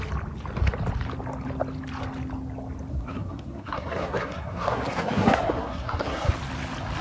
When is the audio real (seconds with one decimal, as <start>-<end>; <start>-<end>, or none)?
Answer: 0.0-2.9; 6.3-7.0